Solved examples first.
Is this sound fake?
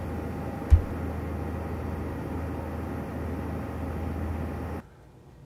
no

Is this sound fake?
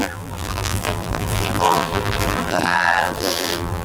yes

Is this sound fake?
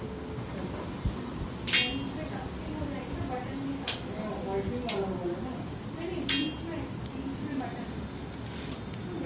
no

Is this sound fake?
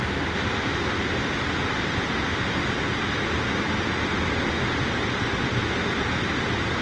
no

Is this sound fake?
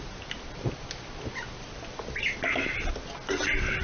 no